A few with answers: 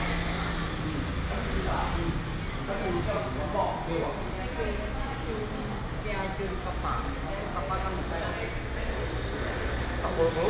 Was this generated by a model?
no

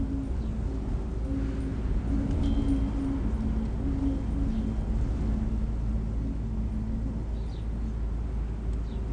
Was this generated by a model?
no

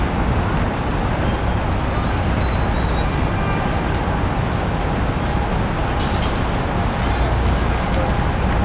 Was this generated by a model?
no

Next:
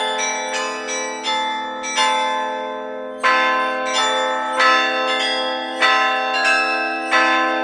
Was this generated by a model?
no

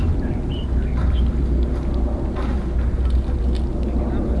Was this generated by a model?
no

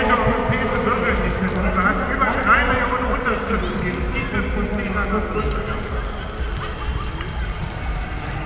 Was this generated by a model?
no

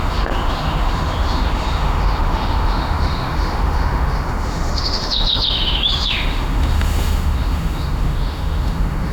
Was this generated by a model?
yes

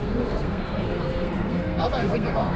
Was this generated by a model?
yes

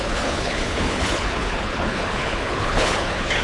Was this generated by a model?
yes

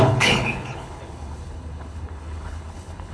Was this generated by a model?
yes